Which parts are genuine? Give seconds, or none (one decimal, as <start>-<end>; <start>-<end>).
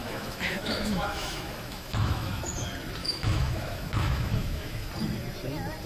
2.4-3.0; 4.9-5.9